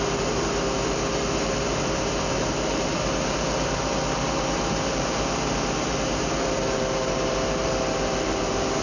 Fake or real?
fake